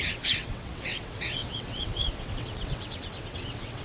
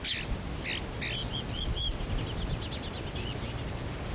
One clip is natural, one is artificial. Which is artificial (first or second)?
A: first